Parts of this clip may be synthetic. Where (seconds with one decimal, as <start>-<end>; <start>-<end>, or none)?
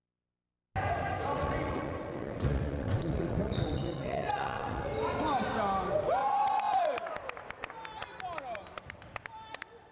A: 1.3-4.9; 6.2-7.1